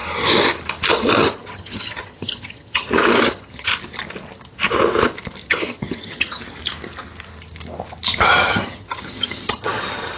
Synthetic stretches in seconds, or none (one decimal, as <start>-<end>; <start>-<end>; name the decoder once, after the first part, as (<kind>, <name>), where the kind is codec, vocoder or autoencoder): 0.9-3.7 (vocoder, HiFi-GAN); 5.5-6.4; 8.4-10.2